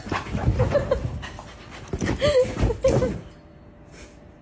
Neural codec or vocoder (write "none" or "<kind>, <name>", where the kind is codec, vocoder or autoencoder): none